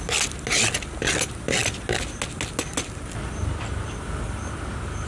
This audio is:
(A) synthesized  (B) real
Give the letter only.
B